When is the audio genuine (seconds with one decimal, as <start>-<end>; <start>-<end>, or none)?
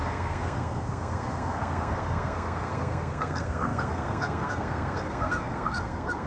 none